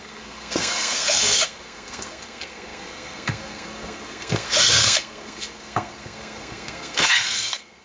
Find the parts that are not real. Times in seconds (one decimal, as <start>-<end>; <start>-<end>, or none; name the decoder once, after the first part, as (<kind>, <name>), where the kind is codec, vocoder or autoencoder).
0.0-7.8 (codec, SNAC)